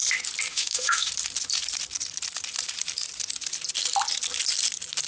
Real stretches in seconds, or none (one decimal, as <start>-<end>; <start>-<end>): 0.0-0.5; 1.1-5.1